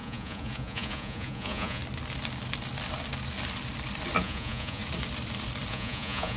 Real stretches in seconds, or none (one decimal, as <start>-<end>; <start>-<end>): 1.8-4.2; 4.8-5.7